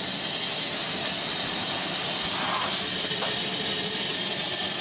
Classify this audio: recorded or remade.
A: recorded